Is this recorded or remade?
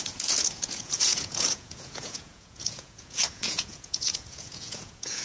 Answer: remade